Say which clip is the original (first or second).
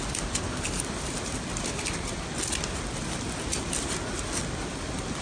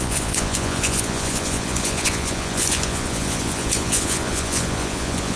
first